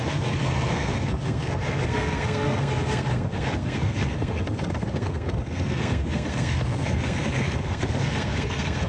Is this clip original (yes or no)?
no